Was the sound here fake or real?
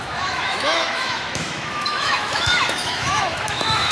fake